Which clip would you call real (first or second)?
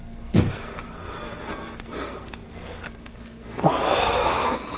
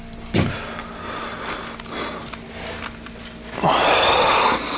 second